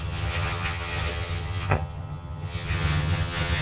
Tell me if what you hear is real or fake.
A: fake